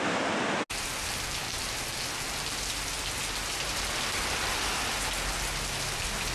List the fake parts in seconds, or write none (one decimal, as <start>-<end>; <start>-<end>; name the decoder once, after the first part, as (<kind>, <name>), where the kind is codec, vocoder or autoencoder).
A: none